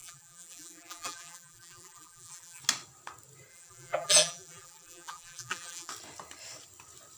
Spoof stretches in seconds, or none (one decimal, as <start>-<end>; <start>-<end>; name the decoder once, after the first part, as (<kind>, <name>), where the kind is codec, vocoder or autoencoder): 0.0-2.6 (vocoder, BigVGAN v2); 3.5-5.9